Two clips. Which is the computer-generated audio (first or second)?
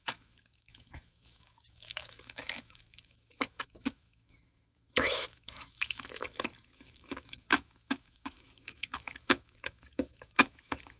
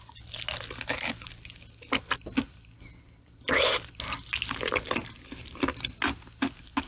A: first